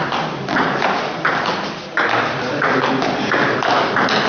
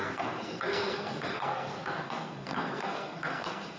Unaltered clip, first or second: first